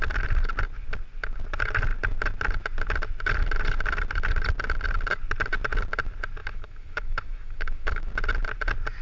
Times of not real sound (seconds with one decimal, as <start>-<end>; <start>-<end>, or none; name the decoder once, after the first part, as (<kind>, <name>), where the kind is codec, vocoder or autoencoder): 6.4-8.1 (autoencoder, DAC-VAE)